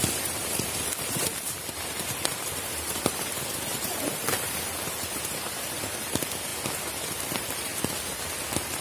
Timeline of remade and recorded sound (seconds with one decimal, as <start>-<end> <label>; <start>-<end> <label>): 0.0-6.5 remade; 6.5-7.2 recorded; 7.2-7.7 remade; 7.7-8.8 recorded